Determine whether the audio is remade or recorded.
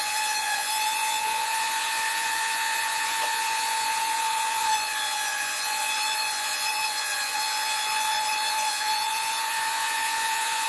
remade